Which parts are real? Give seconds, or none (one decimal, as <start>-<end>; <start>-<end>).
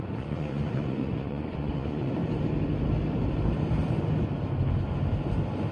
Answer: 2.2-5.7